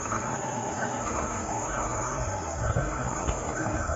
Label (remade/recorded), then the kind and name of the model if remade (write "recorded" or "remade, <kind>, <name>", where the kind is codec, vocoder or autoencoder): remade, codec, SNAC